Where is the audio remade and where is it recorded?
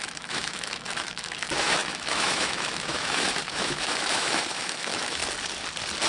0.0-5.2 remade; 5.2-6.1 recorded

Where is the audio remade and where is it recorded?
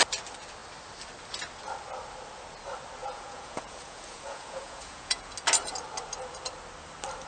0.0-3.0 recorded; 3.0-5.3 remade; 5.3-7.3 recorded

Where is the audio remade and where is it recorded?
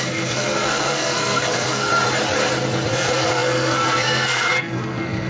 0.0-1.9 remade; 1.9-2.9 recorded; 2.9-5.3 remade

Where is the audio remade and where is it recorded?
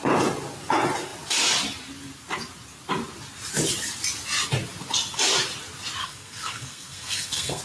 0.0-6.0 recorded; 6.0-7.6 remade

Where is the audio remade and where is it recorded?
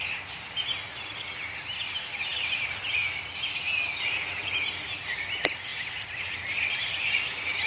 0.0-7.7 recorded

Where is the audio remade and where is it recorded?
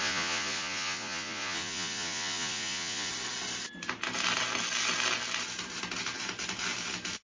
0.0-3.1 remade; 3.1-7.4 recorded